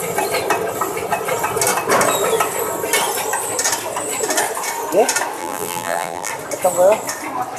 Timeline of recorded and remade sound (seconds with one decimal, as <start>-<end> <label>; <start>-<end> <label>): 0.0-5.4 recorded; 5.4-6.3 remade; 6.3-7.6 recorded